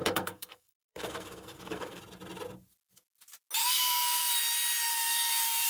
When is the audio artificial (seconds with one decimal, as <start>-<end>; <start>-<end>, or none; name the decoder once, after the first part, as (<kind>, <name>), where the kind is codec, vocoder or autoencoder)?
0.0-2.0 (codec, SNAC); 3.6-4.3; 4.9-5.7